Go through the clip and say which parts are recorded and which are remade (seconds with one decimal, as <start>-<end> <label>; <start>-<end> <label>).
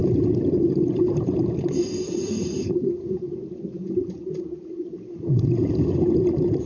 0.0-6.7 recorded